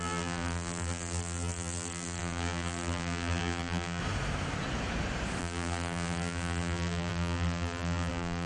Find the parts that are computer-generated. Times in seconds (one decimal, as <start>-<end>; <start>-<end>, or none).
0.0-4.0; 5.4-8.5